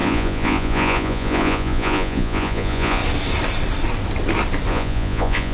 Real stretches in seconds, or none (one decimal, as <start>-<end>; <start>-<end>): 3.0-4.7